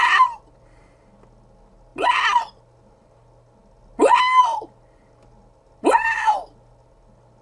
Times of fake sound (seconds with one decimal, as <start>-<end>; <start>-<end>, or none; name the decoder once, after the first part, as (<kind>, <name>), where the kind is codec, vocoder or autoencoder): none